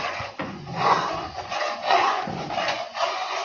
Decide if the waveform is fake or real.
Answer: fake